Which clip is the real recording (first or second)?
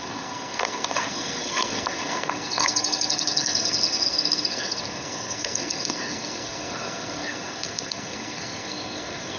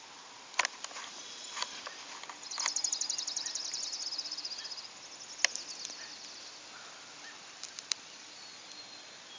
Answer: second